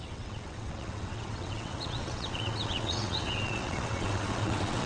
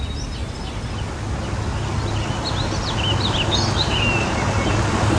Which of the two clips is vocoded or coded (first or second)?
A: first